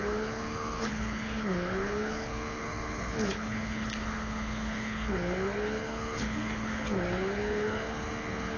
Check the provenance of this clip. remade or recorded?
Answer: remade